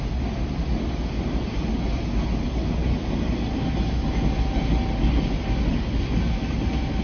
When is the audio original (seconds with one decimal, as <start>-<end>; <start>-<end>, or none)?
0.0-7.0